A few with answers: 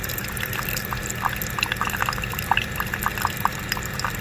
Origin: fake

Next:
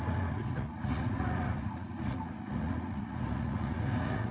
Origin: fake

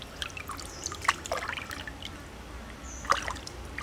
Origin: real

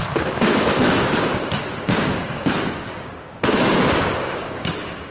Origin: fake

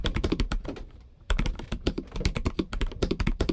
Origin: fake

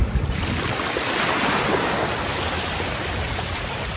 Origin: fake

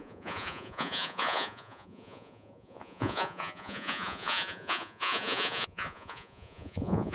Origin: fake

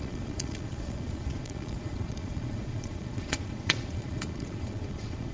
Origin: fake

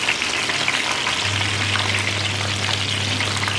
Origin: real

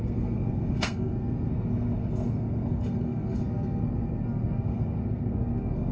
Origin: fake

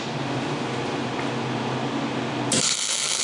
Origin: real